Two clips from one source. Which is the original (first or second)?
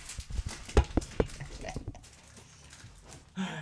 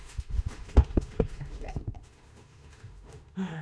first